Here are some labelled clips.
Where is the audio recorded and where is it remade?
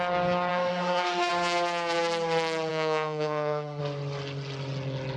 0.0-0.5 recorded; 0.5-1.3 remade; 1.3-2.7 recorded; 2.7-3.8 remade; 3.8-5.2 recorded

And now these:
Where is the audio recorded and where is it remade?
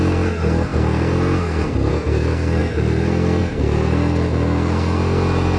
0.0-5.6 remade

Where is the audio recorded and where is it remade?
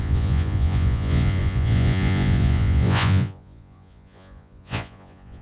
0.0-5.4 remade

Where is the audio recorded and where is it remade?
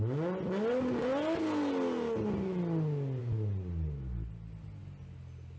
0.0-5.6 recorded